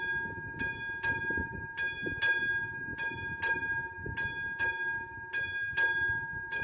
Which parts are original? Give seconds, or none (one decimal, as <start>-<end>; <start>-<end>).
0.0-6.6